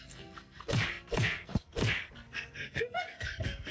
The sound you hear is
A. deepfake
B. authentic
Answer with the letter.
A